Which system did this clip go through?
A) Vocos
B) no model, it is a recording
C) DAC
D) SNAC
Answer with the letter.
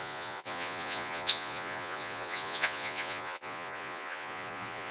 A